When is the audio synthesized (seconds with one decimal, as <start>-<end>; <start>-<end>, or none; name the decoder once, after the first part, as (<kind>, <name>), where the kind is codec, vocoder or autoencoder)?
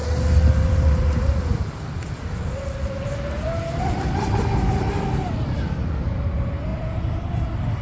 6.7-7.3 (vocoder, BigVGAN v2)